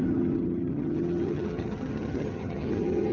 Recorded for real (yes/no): no